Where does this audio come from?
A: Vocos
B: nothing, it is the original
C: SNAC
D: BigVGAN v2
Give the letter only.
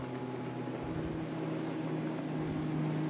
B